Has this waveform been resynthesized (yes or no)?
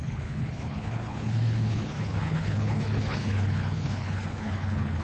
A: yes